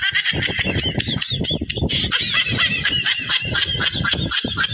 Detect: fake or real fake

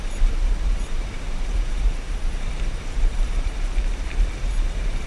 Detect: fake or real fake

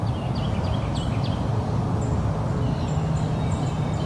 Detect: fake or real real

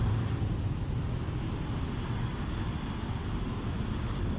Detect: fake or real fake